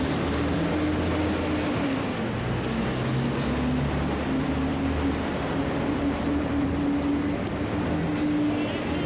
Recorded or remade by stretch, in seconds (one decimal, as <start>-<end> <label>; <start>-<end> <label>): 0.0-4.7 recorded; 4.7-6.7 remade; 6.7-9.1 recorded